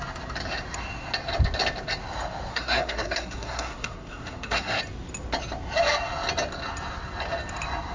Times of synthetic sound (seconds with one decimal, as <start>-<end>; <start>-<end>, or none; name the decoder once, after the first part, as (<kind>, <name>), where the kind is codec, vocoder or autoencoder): 2.5-4.8 (codec, SNAC)